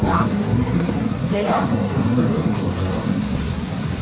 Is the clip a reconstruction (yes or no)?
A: yes